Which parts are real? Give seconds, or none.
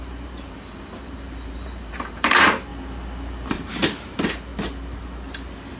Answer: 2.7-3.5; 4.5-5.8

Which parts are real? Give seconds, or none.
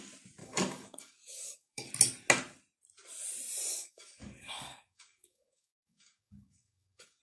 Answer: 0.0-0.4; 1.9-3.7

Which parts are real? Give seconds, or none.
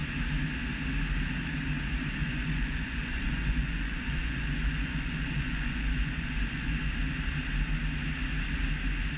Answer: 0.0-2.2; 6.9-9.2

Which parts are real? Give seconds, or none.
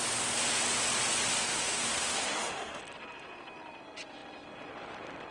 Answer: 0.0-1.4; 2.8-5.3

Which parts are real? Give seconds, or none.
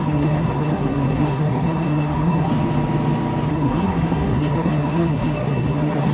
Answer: 2.5-3.5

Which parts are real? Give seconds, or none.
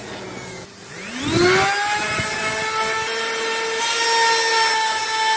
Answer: 1.2-5.4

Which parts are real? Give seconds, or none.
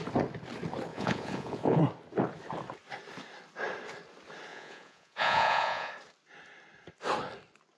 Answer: 0.0-0.9; 1.8-4.5; 5.9-7.8